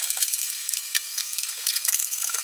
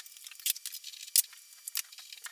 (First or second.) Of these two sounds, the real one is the second